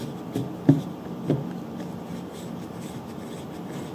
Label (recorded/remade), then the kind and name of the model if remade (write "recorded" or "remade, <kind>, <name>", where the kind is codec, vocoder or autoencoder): recorded